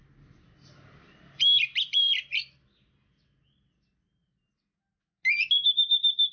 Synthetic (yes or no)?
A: no